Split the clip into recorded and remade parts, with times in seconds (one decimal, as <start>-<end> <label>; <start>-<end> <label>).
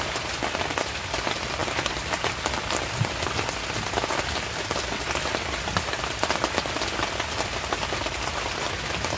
0.0-9.2 recorded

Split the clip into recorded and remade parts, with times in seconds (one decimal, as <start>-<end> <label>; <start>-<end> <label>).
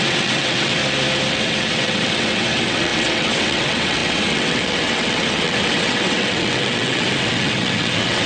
0.0-0.8 remade; 0.8-1.3 recorded; 1.3-8.3 remade